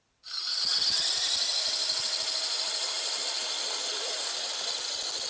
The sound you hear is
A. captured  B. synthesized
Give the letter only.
A